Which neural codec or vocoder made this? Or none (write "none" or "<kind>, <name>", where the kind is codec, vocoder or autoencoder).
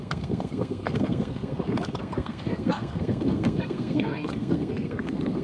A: codec, SNAC